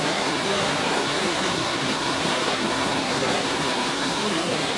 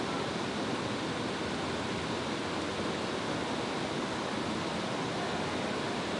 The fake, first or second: first